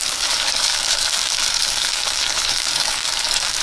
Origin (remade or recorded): remade